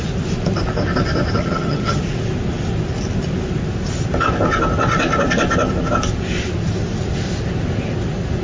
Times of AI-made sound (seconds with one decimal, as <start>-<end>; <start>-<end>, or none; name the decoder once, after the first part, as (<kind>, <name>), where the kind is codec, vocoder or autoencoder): 1.4-2.0 (vocoder, HiFi-GAN)